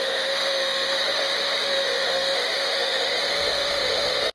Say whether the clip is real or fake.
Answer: fake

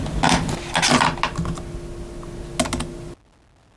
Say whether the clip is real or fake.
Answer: real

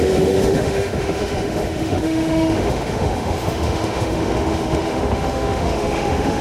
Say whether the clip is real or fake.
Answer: fake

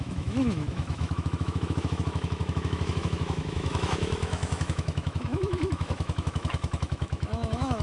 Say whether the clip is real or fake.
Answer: fake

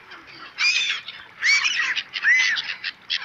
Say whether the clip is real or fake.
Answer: real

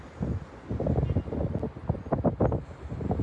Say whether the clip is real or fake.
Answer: real